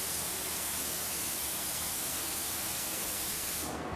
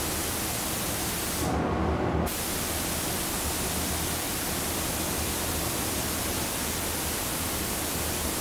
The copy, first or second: first